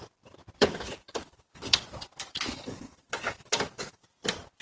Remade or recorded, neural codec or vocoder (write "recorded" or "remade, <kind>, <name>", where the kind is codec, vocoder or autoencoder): remade, vocoder, BigVGAN v2